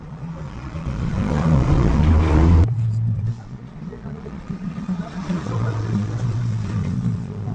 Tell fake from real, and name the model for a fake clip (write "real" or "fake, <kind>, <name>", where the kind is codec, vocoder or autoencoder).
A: fake, vocoder, Vocos